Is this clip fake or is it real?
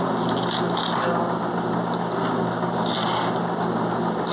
real